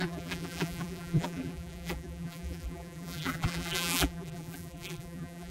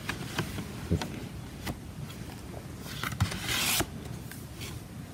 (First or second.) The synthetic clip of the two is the first